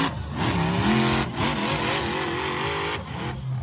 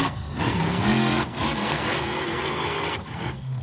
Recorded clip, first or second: first